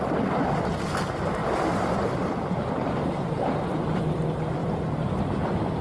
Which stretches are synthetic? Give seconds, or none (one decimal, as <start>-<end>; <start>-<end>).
none